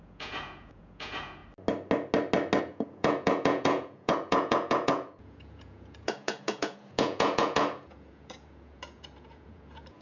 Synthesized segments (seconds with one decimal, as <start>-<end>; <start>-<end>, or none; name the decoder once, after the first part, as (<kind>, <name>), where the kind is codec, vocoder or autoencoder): 0.0-1.4 (vocoder, Vocos); 2.6-10.0